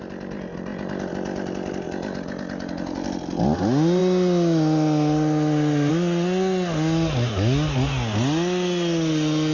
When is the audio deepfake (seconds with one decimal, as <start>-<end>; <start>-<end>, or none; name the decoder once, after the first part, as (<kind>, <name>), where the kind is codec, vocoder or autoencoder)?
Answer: none